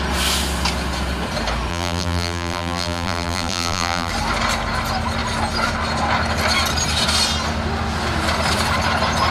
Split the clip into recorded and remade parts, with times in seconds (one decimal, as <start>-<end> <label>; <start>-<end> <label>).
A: 0.0-1.7 recorded; 1.7-4.1 remade; 4.1-9.3 recorded